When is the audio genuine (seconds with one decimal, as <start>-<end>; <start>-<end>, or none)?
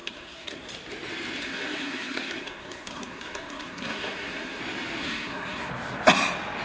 0.7-1.4; 4.6-5.0; 5.7-6.6